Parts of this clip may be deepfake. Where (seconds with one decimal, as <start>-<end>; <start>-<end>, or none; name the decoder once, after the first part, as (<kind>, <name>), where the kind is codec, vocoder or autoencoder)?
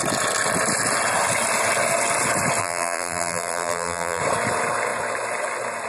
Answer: 2.6-4.2 (vocoder, BigVGAN v2)